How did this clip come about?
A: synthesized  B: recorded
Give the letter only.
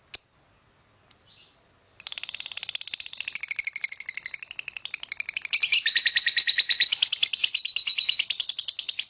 B